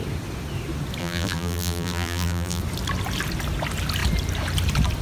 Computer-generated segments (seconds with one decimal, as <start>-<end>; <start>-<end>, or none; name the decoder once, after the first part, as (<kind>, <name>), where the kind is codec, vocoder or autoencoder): 1.0-2.6 (vocoder, BigVGAN v2)